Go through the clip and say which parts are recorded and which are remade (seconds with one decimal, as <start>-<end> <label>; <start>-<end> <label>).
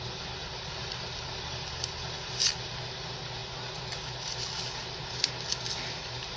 0.0-6.4 recorded